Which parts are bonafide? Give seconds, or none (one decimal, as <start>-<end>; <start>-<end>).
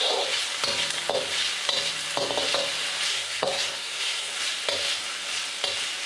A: 0.0-3.1; 4.3-6.1